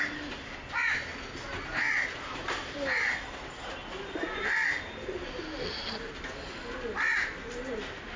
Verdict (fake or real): real